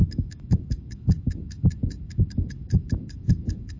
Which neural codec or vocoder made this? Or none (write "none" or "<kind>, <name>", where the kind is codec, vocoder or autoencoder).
autoencoder, DAC-VAE